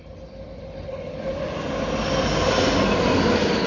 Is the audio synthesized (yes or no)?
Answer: no